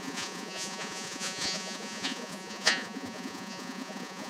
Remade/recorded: remade